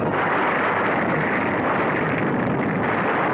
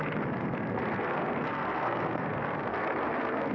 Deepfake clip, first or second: second